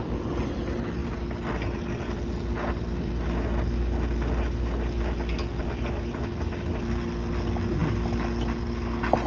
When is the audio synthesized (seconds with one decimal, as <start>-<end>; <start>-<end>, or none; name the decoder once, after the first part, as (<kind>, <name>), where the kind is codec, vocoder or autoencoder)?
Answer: none

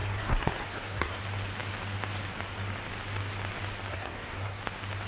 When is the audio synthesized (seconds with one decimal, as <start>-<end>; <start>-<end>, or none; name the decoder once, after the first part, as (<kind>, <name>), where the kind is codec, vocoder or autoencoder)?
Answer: 0.0-1.2 (codec, SNAC); 3.9-4.6

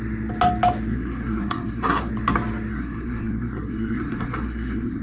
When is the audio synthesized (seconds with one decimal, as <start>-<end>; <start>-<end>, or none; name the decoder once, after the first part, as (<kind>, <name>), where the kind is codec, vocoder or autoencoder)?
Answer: 0.9-2.1 (codec, SNAC); 2.7-5.0